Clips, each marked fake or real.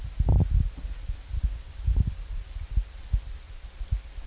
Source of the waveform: real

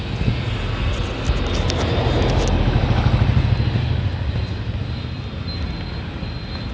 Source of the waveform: real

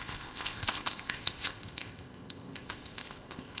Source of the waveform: fake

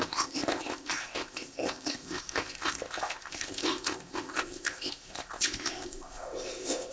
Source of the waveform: fake